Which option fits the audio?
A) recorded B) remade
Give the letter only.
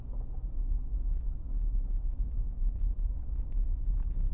B